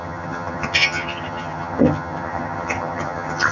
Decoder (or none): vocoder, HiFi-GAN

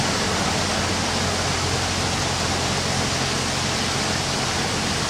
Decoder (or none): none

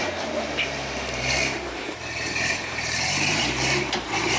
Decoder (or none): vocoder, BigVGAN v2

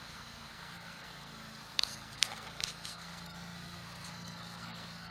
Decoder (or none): codec, SNAC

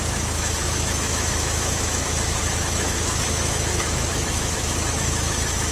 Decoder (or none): autoencoder, DAC-VAE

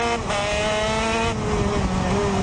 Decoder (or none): none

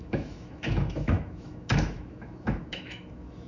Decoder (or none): autoencoder, DAC-VAE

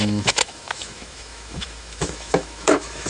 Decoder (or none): autoencoder, DAC-VAE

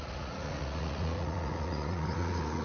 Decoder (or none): vocoder, Vocos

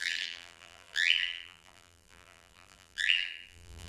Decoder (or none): vocoder, BigVGAN v2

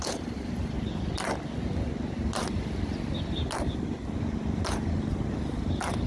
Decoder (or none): none